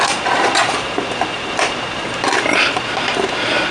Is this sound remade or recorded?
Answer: remade